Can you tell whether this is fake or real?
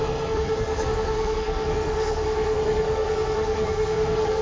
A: fake